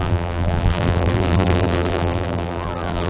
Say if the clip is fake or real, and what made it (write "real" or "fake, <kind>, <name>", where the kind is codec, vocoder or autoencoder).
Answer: fake, vocoder, BigVGAN v2